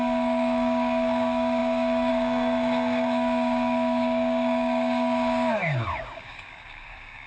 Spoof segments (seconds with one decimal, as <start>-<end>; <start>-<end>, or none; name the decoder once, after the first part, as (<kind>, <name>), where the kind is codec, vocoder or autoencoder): 0.0-7.3 (codec, DAC)